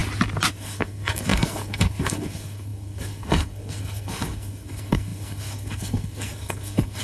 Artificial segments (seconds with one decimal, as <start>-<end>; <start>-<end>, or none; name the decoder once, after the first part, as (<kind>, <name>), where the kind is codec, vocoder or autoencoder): 0.5-7.0 (codec, SNAC)